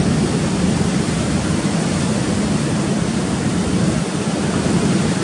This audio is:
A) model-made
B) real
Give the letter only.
B